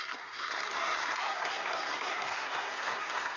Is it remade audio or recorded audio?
remade